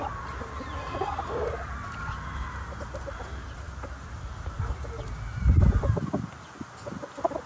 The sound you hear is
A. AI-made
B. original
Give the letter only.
B